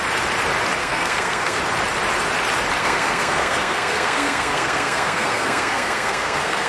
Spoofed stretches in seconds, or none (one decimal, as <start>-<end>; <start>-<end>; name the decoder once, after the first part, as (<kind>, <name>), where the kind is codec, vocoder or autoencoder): 0.8-1.6 (codec, SNAC); 2.8-6.7